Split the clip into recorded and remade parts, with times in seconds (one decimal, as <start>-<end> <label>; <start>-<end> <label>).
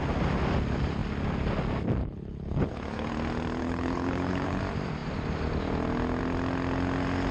0.0-2.0 recorded; 2.0-3.1 remade; 3.1-3.6 recorded; 3.6-4.6 remade; 4.6-7.3 recorded